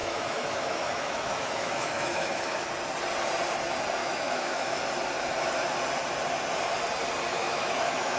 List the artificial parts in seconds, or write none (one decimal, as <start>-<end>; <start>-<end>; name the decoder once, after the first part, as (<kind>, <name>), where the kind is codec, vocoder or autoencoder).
0.0-2.7 (autoencoder, DAC-VAE); 4.0-4.8; 7.3-8.2